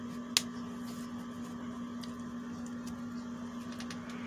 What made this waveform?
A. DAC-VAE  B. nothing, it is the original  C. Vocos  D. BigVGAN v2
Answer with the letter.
B